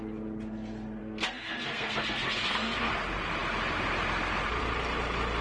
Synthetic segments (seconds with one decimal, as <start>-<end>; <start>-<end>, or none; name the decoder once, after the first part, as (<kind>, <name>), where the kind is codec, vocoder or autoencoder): 1.0-2.9 (codec, SNAC)